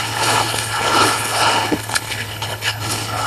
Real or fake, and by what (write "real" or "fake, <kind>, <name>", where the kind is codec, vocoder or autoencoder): fake, codec, HILCodec